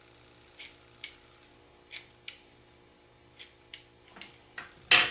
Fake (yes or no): no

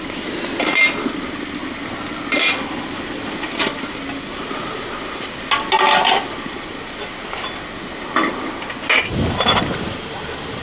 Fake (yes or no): no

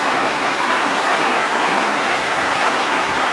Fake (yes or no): yes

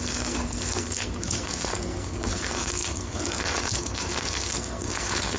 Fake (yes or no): yes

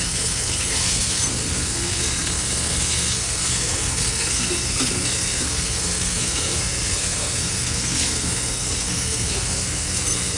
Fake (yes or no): yes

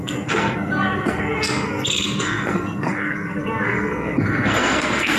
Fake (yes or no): yes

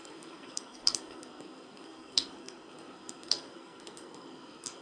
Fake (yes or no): yes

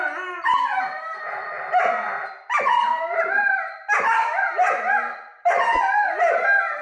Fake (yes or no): no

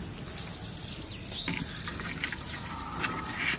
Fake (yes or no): no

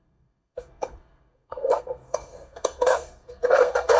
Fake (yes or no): yes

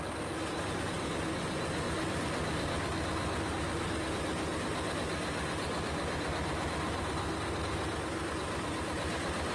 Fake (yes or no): no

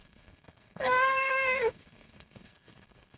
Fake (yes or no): yes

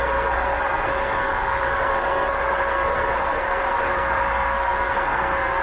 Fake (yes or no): yes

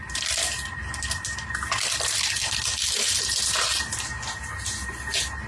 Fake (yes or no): no